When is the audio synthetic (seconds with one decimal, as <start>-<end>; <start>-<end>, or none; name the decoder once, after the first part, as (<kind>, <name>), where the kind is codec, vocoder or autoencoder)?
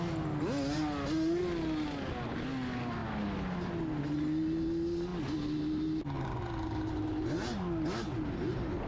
none